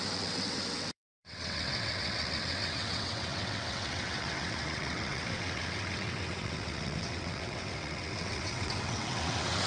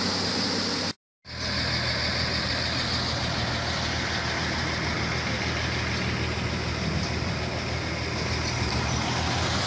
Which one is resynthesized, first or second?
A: first